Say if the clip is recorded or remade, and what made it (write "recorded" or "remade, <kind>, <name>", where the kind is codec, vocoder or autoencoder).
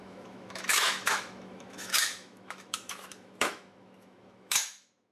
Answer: remade, autoencoder, DAC-VAE